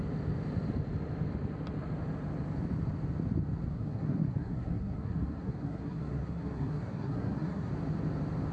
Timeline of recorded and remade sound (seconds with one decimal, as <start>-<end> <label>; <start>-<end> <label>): 0.0-3.7 recorded; 3.7-7.7 remade; 7.7-8.5 recorded